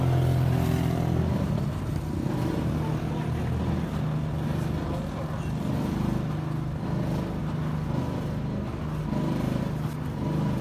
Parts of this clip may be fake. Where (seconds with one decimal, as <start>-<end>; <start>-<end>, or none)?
none